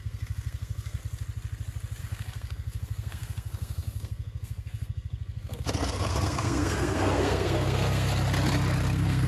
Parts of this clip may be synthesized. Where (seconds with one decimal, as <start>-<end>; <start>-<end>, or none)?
0.0-1.0; 2.0-8.1; 8.8-9.3

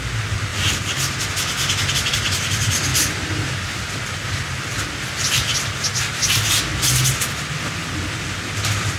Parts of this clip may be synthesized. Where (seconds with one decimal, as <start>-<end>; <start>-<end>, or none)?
none